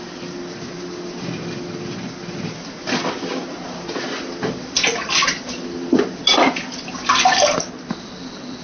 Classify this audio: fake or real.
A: real